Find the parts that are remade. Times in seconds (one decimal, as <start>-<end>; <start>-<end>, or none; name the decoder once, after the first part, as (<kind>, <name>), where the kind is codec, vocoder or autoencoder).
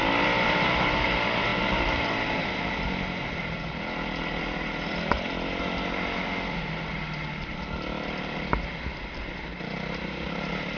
none